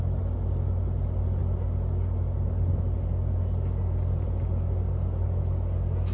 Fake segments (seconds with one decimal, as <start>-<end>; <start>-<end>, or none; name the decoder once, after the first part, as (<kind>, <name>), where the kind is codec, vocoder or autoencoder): none